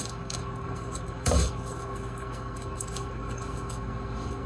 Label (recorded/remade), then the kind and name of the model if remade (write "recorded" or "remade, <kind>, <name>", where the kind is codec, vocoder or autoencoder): remade, codec, SNAC